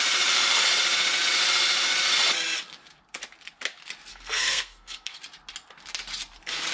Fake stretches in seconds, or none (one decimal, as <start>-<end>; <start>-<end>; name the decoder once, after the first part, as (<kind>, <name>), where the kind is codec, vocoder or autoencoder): 4.1-5.2 (codec, SNAC)